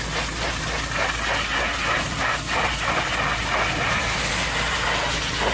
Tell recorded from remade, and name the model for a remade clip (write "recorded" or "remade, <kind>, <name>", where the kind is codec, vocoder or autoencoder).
recorded